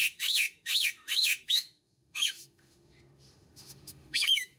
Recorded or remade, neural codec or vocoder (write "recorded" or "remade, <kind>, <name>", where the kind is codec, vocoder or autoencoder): remade, autoencoder, DAC-VAE